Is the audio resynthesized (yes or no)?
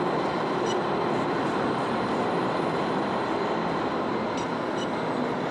no